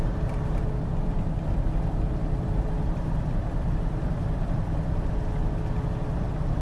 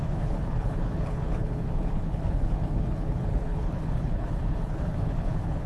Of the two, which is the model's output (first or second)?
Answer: second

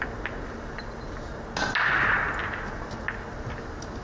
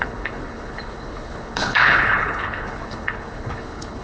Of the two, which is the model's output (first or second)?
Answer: second